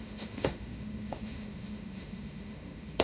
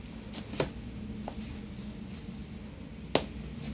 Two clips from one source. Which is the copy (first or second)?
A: first